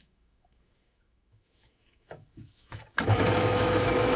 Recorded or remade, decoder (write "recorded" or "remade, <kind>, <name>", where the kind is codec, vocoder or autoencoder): remade, autoencoder, DAC-VAE